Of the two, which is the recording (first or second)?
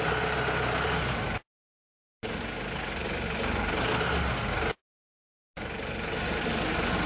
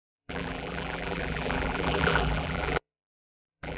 first